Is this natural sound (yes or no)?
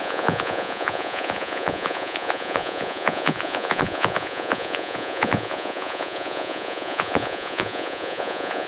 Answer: no